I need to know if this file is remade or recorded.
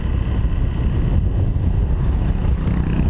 recorded